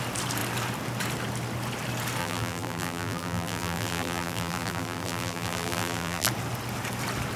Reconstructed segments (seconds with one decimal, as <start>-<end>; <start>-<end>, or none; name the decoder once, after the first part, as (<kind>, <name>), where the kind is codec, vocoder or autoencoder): 2.2-6.3 (vocoder, BigVGAN v2)